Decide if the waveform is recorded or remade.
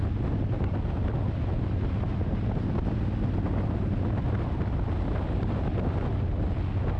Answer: recorded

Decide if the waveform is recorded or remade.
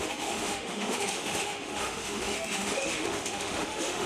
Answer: remade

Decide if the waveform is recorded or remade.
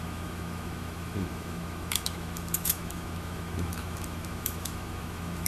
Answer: remade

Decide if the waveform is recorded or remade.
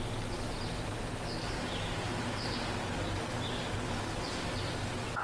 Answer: recorded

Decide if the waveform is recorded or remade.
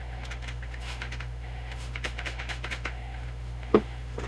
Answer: remade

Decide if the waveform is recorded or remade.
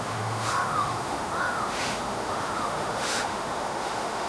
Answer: remade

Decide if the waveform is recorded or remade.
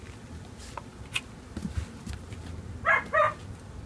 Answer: recorded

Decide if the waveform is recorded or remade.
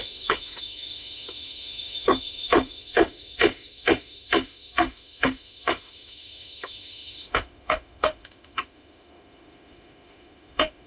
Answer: remade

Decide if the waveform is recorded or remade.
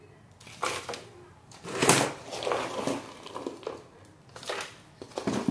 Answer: recorded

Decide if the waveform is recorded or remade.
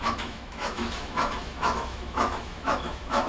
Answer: remade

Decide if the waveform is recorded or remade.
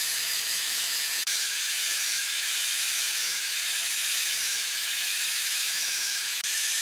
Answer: remade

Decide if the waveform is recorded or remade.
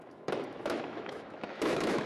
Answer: remade